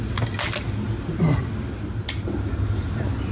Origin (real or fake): real